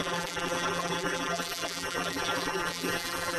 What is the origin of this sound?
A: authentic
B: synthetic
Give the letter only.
B